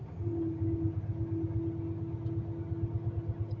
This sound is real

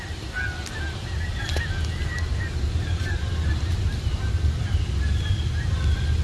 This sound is real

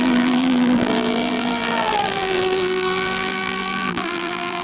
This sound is fake